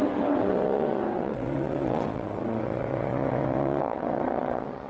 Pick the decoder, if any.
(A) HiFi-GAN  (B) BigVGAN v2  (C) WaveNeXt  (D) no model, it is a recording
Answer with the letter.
C